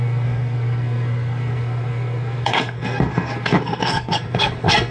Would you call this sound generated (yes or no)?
yes